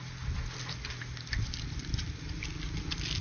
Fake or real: real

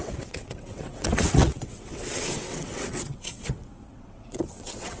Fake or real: fake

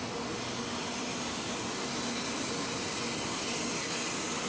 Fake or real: real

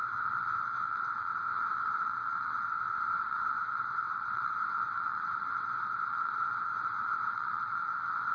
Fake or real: fake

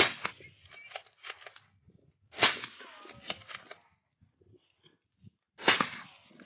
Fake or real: real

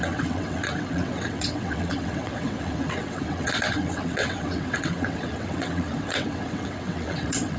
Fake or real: fake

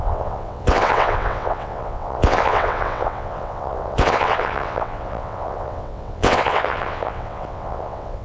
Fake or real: fake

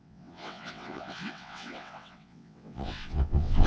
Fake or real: fake